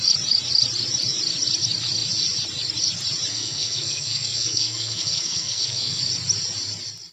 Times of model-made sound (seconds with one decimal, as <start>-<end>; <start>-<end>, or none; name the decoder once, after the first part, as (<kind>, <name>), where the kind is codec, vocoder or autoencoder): 3.3-6.0 (codec, SNAC)